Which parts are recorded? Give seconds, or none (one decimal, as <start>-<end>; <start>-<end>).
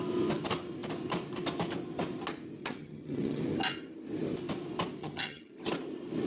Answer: 0.0-2.6; 3.4-5.0; 5.5-6.3